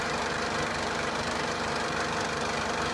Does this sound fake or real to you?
fake